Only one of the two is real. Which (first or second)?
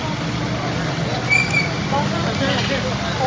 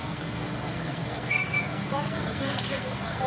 first